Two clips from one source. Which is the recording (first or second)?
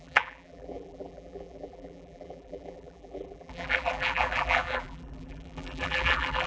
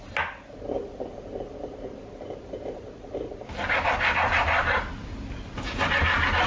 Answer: second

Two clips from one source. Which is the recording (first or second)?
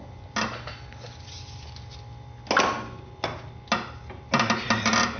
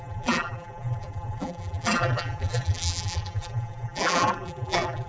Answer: first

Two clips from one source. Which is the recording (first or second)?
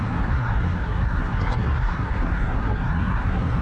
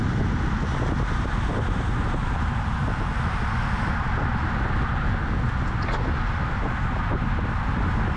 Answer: second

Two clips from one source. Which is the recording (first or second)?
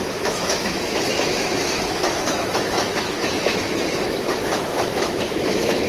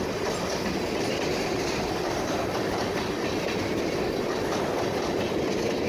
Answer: second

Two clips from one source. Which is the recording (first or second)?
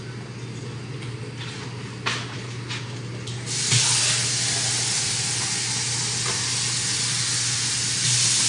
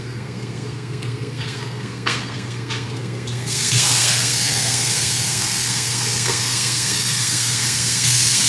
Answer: first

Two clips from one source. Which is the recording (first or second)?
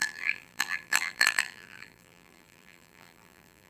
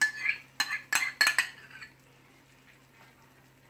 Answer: second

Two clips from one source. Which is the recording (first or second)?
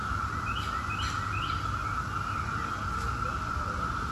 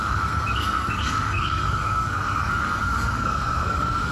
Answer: first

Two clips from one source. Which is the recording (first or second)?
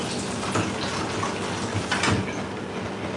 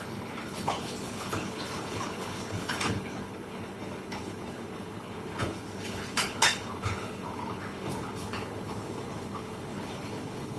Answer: first